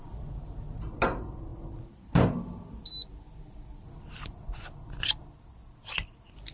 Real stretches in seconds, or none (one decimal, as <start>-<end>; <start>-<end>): 0.0-6.5